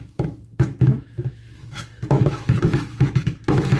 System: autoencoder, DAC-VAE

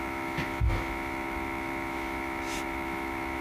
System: autoencoder, DAC-VAE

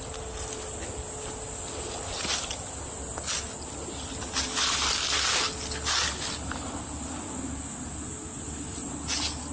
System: none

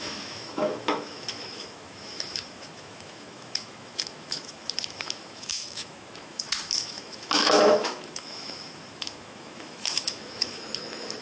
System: autoencoder, DAC-VAE